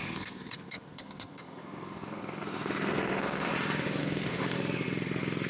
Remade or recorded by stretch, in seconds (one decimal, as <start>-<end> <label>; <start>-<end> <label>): 0.0-3.5 remade; 3.5-4.0 recorded; 4.0-4.4 remade; 4.4-5.5 recorded